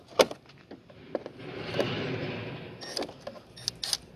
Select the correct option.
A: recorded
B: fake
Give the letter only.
A